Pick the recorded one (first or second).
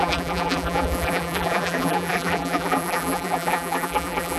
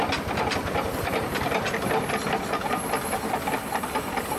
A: second